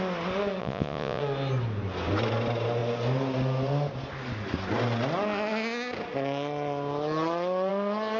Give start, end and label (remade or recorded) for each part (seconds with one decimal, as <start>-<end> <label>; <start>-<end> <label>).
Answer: 0.0-0.6 recorded; 0.6-1.2 remade; 1.2-8.2 recorded